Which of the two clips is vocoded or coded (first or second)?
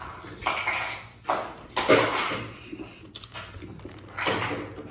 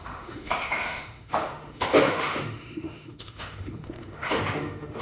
second